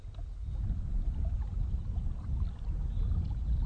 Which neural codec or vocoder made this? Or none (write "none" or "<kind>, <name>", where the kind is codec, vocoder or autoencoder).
none